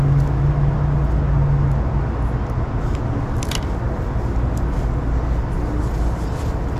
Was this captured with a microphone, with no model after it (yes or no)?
yes